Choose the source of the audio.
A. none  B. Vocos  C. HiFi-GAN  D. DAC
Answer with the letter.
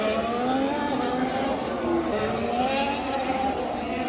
A